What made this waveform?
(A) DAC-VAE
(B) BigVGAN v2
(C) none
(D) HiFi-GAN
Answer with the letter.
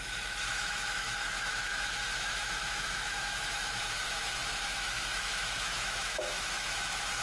A